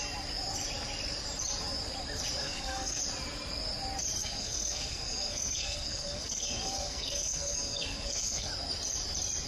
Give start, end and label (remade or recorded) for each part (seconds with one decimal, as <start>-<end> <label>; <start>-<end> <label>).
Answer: 0.0-2.4 recorded; 2.4-3.0 remade; 3.0-4.2 recorded; 4.2-8.5 remade; 8.5-9.5 recorded